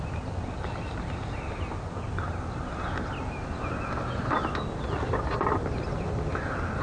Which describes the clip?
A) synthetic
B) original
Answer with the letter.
B